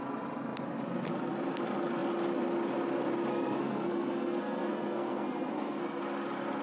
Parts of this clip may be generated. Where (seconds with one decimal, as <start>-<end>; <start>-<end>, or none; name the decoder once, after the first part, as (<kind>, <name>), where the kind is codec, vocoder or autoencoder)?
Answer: 3.3-6.0 (codec, SNAC)